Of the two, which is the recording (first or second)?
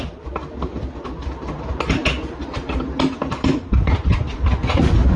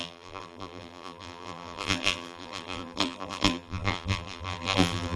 first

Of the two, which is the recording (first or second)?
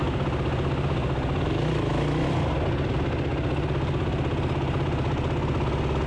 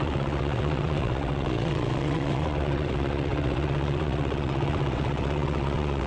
first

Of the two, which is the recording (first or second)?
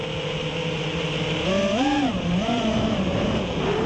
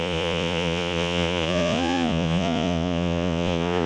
first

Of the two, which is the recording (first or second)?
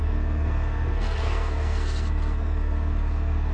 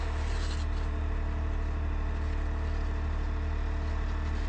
second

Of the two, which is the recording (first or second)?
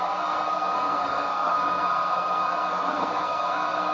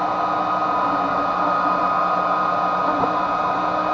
second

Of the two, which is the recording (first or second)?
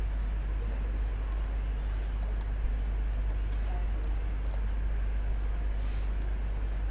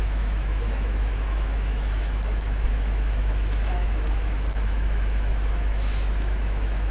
first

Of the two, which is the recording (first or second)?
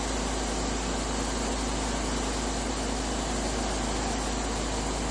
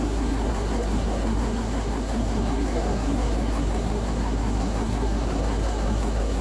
first